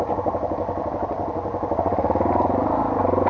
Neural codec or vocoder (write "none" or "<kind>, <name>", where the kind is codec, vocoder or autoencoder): none